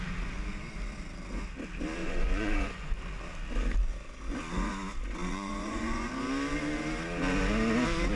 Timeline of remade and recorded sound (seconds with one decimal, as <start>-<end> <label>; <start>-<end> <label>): 0.0-2.0 recorded; 2.0-2.9 remade; 2.9-5.2 recorded; 5.2-6.1 remade; 6.1-8.2 recorded